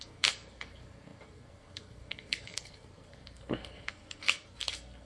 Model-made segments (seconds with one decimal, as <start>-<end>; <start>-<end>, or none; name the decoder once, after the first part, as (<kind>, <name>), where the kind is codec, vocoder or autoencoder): 0.0-5.1 (codec, SNAC)